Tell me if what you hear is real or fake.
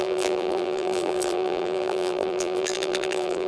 fake